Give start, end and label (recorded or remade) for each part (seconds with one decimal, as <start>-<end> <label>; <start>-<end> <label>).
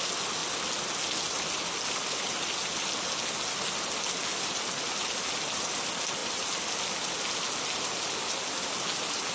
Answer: 0.0-4.3 recorded; 4.3-4.9 remade; 4.9-9.3 recorded